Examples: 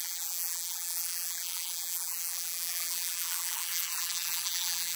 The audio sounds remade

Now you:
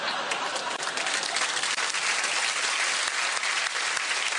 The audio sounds recorded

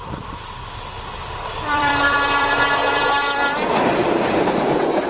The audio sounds remade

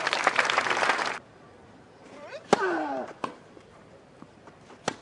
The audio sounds remade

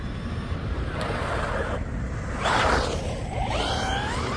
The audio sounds remade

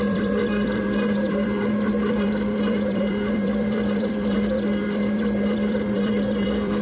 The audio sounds remade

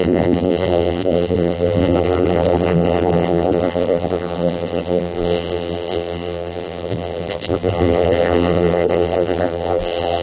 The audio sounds remade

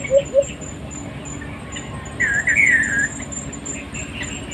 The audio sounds remade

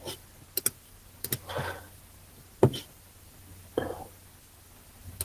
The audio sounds recorded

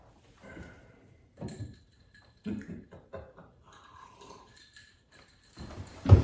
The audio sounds remade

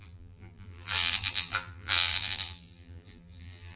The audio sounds remade